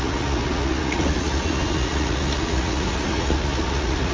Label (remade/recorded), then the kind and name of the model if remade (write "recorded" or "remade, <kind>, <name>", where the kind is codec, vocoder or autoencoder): remade, vocoder, Vocos